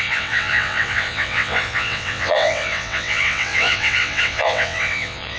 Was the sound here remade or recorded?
remade